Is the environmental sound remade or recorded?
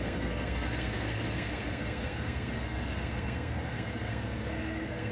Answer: remade